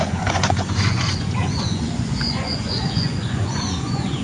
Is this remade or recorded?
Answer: remade